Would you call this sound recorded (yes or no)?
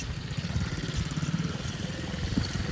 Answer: yes